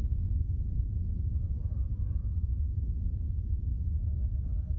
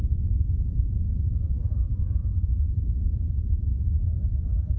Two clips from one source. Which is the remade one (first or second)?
second